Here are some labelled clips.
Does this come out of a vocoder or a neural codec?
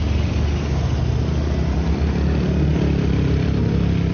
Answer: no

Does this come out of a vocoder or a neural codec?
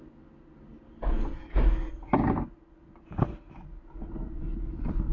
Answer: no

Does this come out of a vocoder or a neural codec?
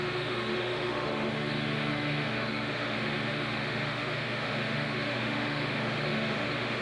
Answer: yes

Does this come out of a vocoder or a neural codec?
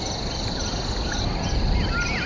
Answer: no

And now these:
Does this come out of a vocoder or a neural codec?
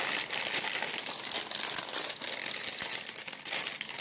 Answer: no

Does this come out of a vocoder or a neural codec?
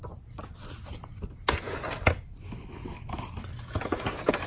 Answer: no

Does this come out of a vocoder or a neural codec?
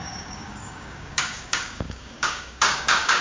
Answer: yes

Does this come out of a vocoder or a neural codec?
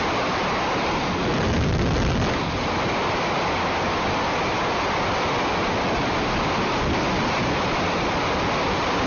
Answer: yes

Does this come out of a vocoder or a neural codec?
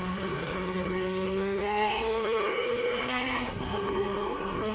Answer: yes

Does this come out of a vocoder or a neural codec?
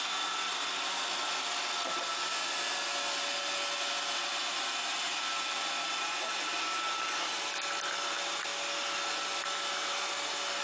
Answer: no